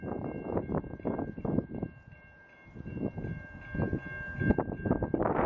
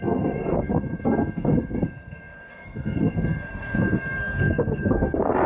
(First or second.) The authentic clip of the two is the first